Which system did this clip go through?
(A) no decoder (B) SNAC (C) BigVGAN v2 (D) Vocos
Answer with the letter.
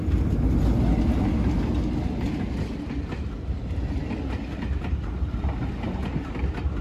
A